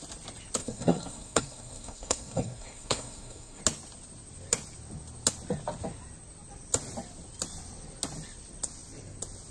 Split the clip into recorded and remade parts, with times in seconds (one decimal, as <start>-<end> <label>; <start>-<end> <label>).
0.0-0.6 recorded; 0.6-3.6 remade; 3.6-9.5 recorded